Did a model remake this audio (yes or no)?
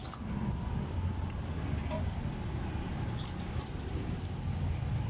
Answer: no